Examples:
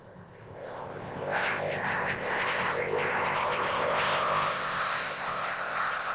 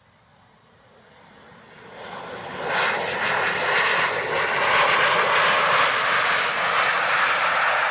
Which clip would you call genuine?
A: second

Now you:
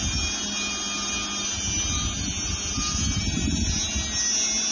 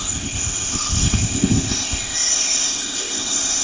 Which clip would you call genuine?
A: first